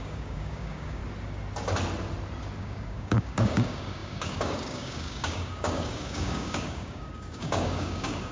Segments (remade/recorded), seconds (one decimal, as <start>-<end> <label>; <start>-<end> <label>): 0.0-1.0 remade; 1.0-2.6 recorded; 2.6-8.3 remade